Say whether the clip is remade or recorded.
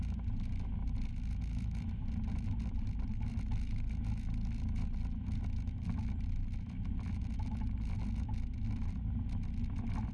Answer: recorded